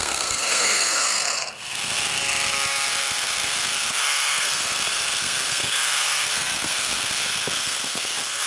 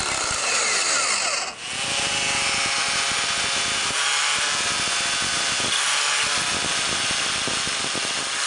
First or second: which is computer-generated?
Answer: first